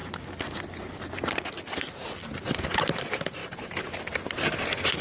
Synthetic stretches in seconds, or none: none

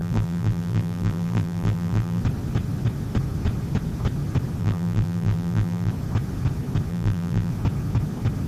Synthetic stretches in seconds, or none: 0.0-2.2 (vocoder, BigVGAN v2); 4.6-5.9; 6.9-7.5